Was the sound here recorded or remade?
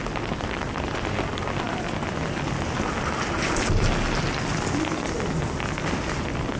recorded